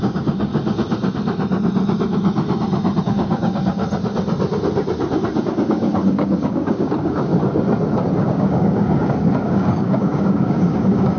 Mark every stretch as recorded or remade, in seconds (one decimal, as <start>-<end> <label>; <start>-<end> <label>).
0.0-0.5 remade; 0.5-3.0 recorded; 3.0-3.8 remade; 3.8-5.4 recorded; 5.4-7.3 remade; 7.3-8.2 recorded; 8.2-11.2 remade